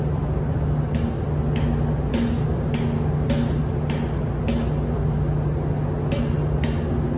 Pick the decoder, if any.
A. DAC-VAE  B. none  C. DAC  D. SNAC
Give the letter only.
B